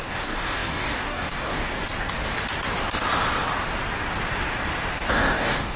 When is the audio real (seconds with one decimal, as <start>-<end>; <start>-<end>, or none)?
1.6-5.1